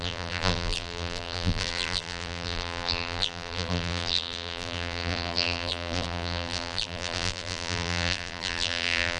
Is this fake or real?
fake